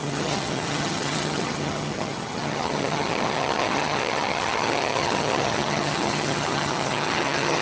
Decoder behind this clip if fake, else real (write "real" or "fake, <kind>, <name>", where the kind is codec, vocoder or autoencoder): fake, vocoder, HiFi-GAN